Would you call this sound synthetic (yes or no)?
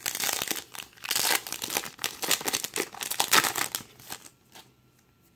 no